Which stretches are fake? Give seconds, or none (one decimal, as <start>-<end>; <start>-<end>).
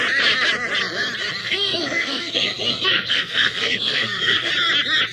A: 1.4-4.5